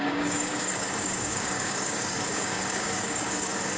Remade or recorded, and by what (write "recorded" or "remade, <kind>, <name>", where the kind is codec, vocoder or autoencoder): remade, codec, DAC